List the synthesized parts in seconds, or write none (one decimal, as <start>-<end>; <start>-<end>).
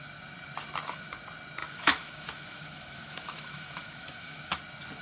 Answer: 1.6-4.6